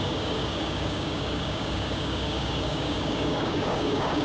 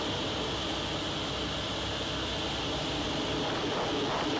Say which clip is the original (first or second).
second